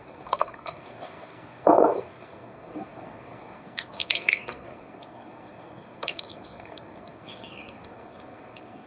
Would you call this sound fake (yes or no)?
yes